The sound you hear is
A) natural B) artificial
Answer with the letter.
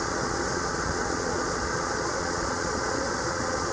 B